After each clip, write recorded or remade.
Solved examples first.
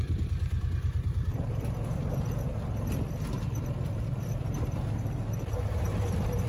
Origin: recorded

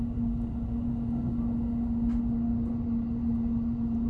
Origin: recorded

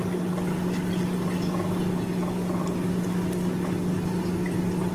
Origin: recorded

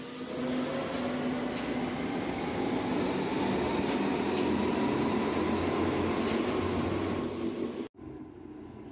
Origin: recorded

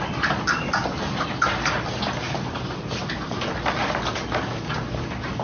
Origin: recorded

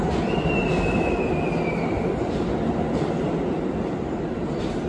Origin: recorded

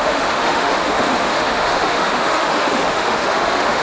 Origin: remade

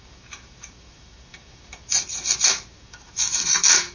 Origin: remade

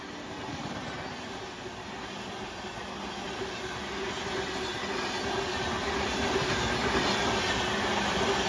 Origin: recorded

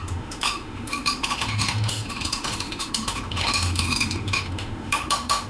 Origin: remade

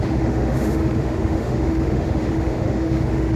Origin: remade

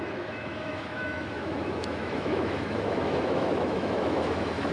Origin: remade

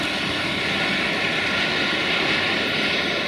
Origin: recorded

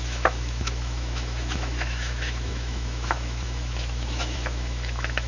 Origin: remade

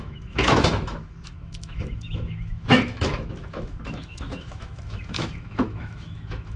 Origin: remade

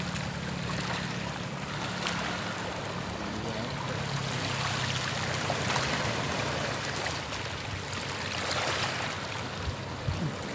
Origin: recorded